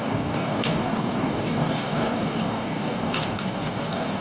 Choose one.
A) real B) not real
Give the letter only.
B